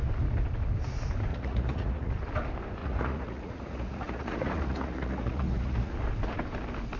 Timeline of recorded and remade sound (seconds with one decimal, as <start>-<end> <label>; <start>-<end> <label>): 0.0-1.3 recorded; 1.3-2.1 remade; 2.1-2.8 recorded; 2.8-5.9 remade; 5.9-7.0 recorded